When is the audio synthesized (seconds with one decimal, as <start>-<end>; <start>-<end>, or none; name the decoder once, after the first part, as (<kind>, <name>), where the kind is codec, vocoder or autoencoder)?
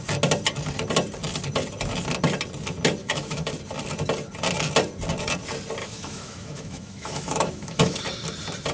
3.0-3.5 (autoencoder, DAC-VAE); 5.8-8.0